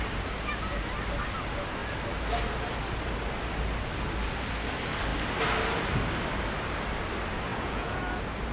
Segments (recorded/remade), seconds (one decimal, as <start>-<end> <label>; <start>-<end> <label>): 0.0-7.5 recorded; 7.5-8.0 remade; 8.0-8.5 recorded